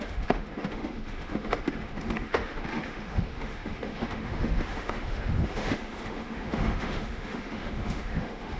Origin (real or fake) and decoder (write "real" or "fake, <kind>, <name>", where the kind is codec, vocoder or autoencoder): fake, autoencoder, DAC-VAE